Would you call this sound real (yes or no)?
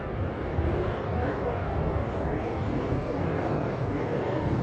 no